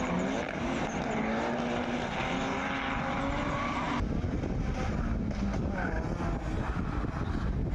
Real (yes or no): yes